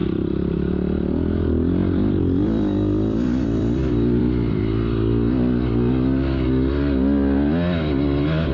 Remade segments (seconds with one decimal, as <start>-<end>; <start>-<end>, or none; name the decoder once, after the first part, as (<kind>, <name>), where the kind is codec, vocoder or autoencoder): 0.0-0.5 (vocoder, BigVGAN v2); 1.8-4.2